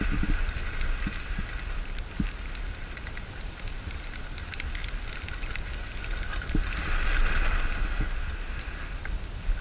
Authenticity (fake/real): real